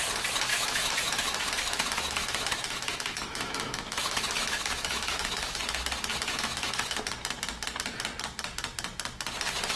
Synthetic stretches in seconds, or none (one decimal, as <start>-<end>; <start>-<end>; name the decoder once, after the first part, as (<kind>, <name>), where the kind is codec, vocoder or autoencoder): 0.5-5.6 (autoencoder, DAC-VAE); 6.1-7.0